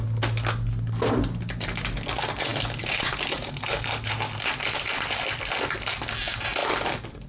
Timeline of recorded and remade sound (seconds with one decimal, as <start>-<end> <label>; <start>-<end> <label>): 0.0-7.3 recorded